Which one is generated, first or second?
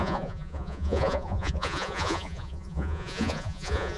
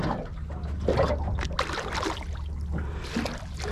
first